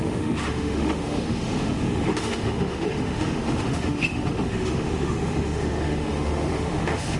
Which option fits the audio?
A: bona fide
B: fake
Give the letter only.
B